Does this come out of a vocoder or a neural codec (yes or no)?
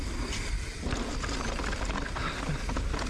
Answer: no